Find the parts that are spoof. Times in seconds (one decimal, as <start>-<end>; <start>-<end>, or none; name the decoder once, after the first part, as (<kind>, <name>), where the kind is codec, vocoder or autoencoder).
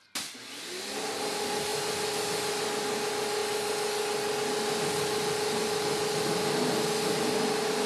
none